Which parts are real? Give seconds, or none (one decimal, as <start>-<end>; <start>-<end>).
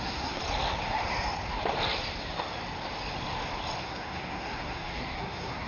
0.4-3.8